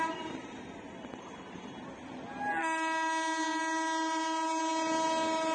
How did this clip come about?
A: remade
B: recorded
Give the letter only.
B